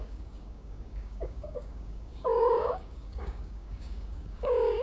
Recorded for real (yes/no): no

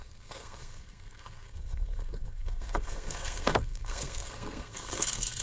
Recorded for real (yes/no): no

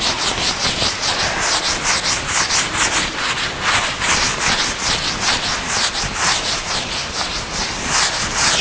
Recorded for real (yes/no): yes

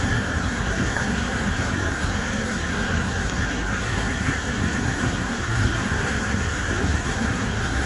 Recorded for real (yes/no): no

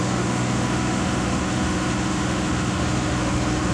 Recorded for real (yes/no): no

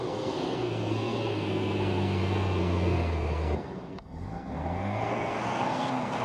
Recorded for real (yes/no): no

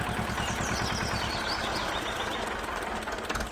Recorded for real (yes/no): yes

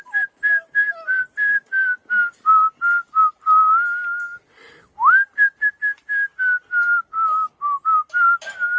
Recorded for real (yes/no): yes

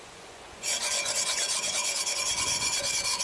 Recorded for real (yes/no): no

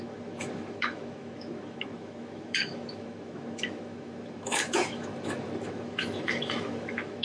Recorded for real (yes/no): no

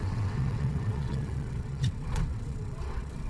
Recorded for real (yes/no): no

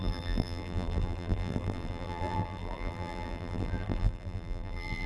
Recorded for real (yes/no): no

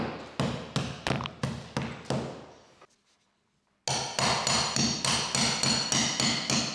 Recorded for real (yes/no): yes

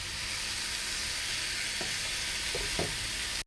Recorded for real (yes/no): yes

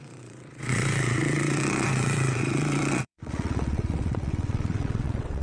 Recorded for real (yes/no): no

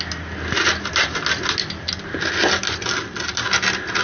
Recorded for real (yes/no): yes